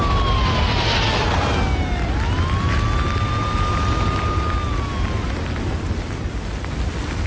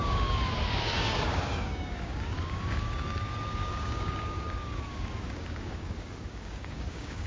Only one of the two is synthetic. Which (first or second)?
second